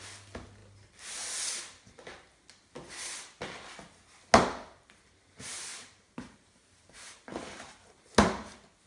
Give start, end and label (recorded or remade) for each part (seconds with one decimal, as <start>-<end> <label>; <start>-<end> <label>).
0.0-5.7 recorded; 5.7-7.2 remade; 7.2-8.9 recorded